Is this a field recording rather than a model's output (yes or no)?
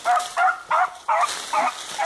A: yes